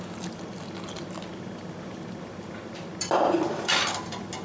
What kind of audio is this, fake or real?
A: real